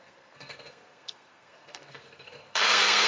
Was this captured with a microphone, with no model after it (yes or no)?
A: no